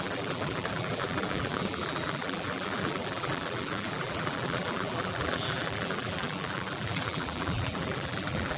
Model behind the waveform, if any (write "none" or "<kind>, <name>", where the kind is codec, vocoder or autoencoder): vocoder, BigVGAN v2